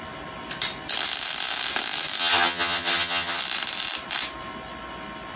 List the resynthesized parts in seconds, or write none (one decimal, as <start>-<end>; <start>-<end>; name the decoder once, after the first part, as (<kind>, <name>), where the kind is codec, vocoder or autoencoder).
2.2-3.4 (vocoder, HiFi-GAN)